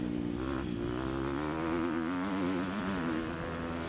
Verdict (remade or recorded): recorded